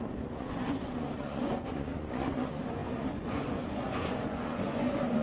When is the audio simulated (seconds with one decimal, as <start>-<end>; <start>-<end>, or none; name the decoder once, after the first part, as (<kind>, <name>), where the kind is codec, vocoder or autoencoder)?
0.0-5.2 (vocoder, Vocos)